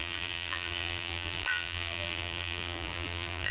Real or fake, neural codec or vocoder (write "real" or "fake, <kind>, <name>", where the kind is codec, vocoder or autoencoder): fake, vocoder, BigVGAN v2